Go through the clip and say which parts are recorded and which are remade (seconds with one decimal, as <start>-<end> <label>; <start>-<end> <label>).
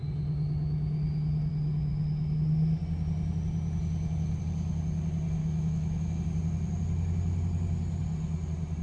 0.0-5.4 recorded; 5.4-6.2 remade; 6.2-8.8 recorded